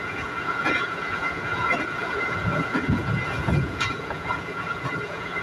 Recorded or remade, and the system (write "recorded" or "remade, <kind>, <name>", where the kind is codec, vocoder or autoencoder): remade, vocoder, Vocos